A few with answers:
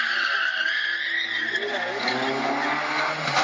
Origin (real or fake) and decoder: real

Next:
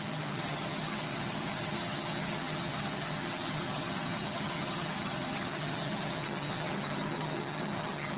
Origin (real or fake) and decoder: fake, vocoder, HiFi-GAN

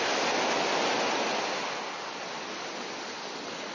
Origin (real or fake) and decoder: real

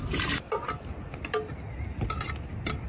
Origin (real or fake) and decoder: real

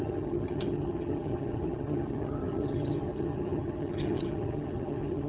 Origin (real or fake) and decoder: fake, vocoder, HiFi-GAN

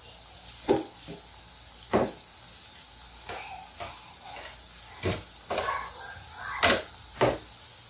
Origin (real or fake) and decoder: real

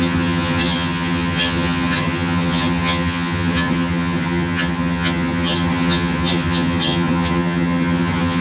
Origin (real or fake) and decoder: fake, vocoder, HiFi-GAN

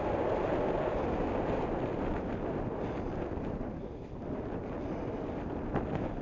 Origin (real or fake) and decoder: real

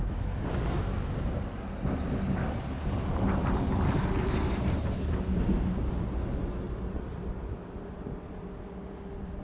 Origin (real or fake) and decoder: real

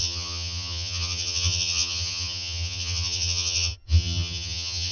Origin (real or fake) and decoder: fake, vocoder, HiFi-GAN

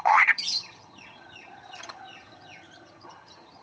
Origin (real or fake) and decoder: fake, vocoder, HiFi-GAN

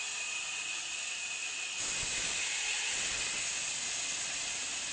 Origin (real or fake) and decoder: real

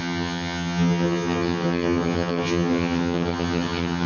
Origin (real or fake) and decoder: fake, vocoder, HiFi-GAN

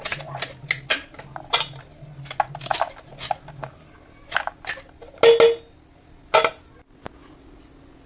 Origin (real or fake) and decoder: real